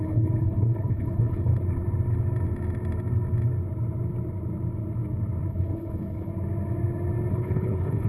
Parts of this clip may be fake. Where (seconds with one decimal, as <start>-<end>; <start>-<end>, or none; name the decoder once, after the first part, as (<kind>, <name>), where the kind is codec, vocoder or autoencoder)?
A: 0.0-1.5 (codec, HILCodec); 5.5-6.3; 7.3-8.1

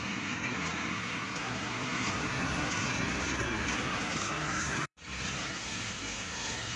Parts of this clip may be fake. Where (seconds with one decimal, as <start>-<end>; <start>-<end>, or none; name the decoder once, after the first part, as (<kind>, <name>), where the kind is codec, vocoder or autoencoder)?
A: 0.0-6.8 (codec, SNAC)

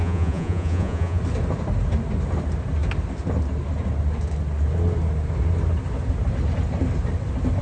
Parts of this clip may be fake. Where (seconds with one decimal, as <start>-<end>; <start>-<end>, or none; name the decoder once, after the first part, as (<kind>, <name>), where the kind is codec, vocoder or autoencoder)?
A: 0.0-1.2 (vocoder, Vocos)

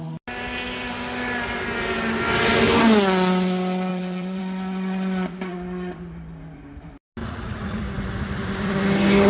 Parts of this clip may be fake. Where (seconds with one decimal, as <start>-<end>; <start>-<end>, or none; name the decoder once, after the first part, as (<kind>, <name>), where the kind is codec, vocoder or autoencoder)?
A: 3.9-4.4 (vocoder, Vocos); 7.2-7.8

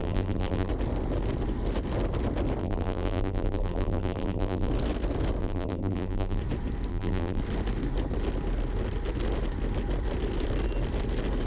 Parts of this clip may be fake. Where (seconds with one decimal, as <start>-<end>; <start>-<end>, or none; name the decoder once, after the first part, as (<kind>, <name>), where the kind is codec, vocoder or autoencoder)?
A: 0.0-0.7 (vocoder, BigVGAN v2); 2.6-4.7; 5.4-6.4; 6.9-7.4

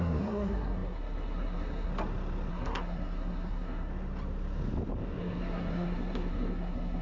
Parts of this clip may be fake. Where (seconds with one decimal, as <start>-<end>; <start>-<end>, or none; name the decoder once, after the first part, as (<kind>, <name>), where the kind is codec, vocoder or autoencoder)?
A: 0.0-1.9 (codec, SNAC); 2.5-3.9; 5.2-7.0

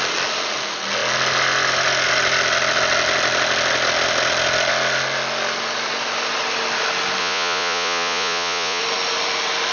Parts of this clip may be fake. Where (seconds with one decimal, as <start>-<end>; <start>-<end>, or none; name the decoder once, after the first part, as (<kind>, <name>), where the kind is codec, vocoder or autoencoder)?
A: 7.2-8.8 (vocoder, Vocos)

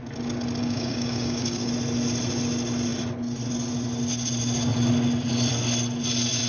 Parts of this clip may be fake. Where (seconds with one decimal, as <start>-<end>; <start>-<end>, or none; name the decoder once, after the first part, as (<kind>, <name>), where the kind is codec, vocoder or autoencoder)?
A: 0.6-1.7 (codec, DAC)